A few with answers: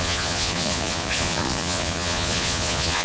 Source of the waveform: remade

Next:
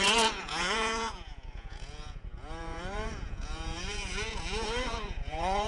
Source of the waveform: remade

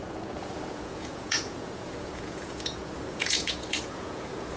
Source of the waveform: remade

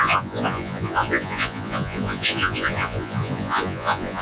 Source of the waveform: remade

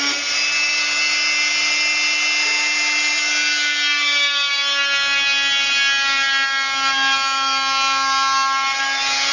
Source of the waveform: recorded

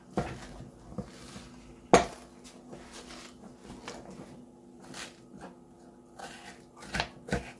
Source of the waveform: recorded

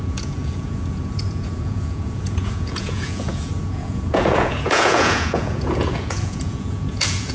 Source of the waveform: remade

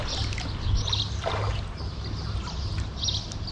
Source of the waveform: recorded